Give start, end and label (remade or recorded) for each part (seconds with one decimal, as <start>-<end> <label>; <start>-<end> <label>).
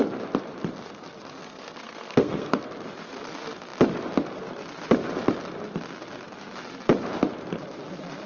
0.0-1.4 recorded; 1.4-2.7 remade; 2.7-8.3 recorded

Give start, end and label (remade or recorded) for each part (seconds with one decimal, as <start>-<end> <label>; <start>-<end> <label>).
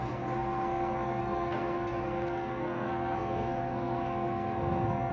0.0-5.1 remade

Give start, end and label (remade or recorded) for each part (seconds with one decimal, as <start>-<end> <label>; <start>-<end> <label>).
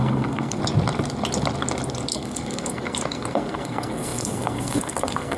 0.0-0.6 remade; 0.6-2.1 recorded; 2.1-5.4 remade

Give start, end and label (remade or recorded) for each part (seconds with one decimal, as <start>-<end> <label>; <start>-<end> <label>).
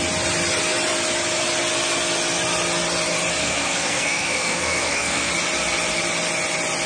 0.0-3.4 recorded; 3.4-5.3 remade; 5.3-6.9 recorded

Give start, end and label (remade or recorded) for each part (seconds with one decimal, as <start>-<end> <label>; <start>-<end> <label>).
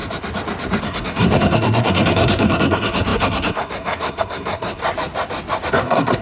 0.0-0.8 recorded; 0.8-4.8 remade; 4.8-5.7 recorded; 5.7-6.2 remade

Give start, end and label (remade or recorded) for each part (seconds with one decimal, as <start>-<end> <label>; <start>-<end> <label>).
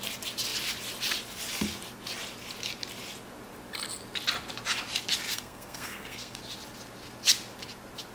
0.0-5.3 recorded; 5.3-6.4 remade; 6.4-8.1 recorded